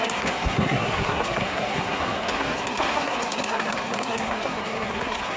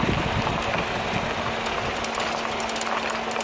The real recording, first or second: second